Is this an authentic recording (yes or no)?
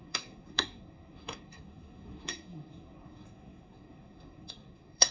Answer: no